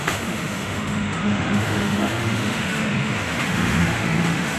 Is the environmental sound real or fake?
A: fake